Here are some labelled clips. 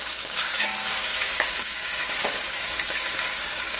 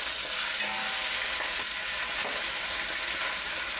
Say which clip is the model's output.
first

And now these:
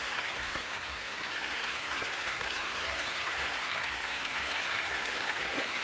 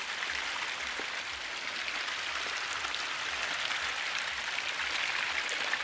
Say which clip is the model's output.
first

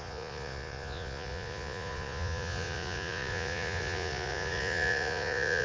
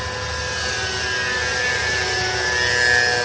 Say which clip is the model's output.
first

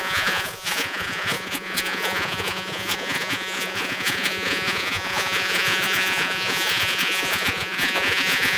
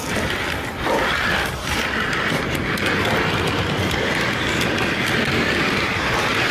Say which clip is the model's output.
first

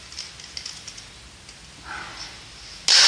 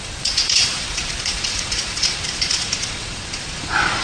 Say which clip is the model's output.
second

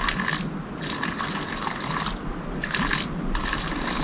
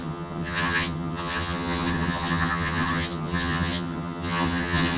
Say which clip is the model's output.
second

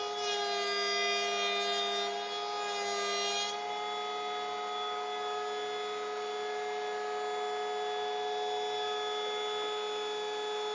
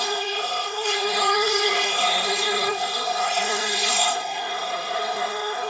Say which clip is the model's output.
second